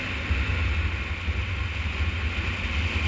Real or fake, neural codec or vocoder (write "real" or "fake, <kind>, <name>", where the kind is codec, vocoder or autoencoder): real